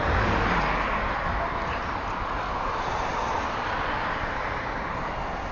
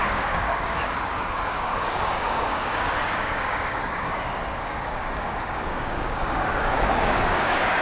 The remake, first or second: second